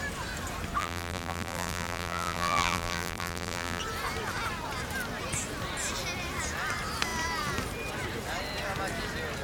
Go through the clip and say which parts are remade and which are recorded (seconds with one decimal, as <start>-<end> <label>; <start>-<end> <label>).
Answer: 0.0-0.8 recorded; 0.8-3.8 remade; 3.8-9.4 recorded